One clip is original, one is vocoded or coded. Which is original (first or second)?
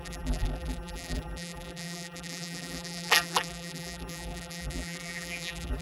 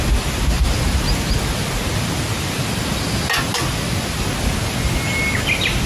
second